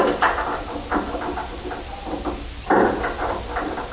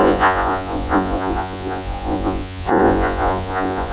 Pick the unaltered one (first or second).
first